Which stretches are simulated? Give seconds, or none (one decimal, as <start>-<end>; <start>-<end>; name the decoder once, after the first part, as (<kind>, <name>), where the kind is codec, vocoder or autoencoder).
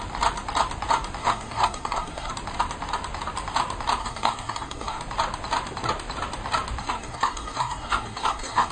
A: 1.2-2.3 (codec, SNAC); 4.0-5.0; 6.8-8.7